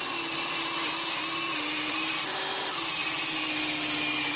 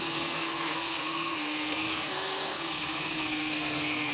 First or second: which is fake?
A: second